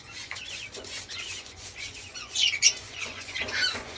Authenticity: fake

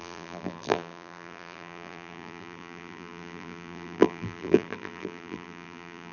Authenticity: fake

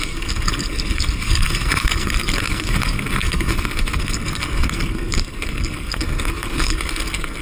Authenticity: fake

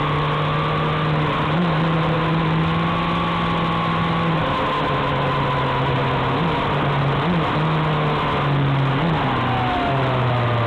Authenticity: real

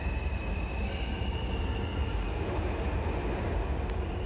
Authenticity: real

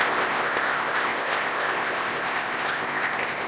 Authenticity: fake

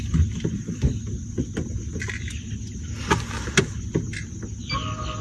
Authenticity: real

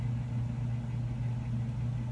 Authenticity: real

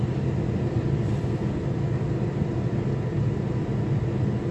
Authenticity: real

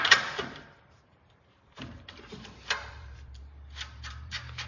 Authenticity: fake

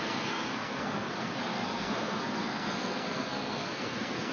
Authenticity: fake